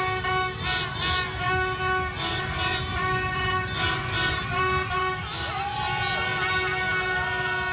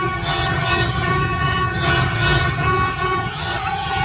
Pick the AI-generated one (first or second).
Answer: second